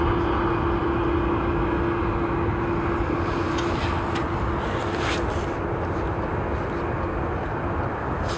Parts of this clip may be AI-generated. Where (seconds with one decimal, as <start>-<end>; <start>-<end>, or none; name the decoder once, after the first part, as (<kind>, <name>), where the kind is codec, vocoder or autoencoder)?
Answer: none